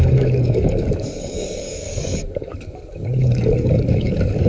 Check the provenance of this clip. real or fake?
fake